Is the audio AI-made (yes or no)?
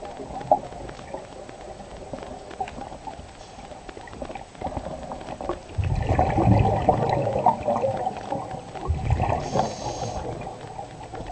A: no